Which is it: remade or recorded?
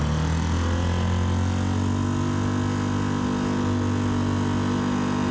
recorded